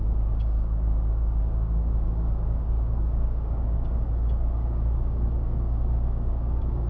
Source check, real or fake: fake